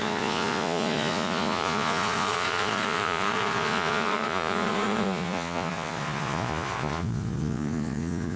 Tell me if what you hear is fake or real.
fake